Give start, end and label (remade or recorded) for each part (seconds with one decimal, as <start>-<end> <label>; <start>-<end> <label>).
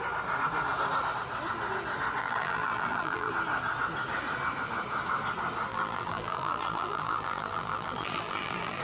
0.0-2.2 recorded; 2.2-3.3 remade; 3.3-5.7 recorded; 5.7-8.8 remade